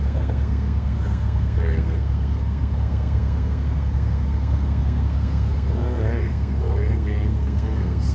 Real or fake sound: fake